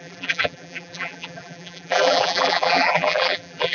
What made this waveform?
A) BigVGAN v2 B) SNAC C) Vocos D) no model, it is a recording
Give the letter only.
A